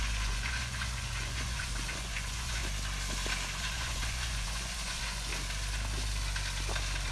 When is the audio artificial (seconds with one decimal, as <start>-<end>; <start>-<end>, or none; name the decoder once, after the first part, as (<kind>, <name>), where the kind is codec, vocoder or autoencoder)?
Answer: 0.0-2.6 (vocoder, Vocos); 3.6-5.3

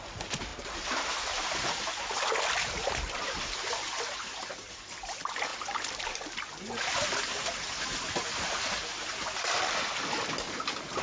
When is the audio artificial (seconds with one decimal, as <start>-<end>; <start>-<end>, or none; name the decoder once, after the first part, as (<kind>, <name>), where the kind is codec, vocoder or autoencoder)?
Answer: none

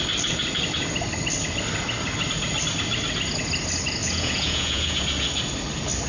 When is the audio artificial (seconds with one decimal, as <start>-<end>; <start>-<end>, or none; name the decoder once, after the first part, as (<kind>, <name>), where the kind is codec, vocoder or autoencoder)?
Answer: 4.0-5.0 (vocoder, Vocos)

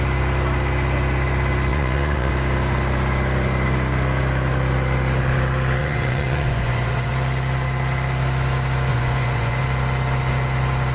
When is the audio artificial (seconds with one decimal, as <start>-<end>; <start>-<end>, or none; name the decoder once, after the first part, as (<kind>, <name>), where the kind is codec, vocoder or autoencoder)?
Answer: 1.7-2.3 (vocoder, Vocos); 5.8-7.1; 8.9-9.6

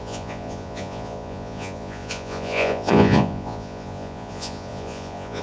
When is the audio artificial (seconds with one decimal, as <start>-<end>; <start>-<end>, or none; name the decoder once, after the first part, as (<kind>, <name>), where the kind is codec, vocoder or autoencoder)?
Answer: 0.0-5.4 (vocoder, Vocos)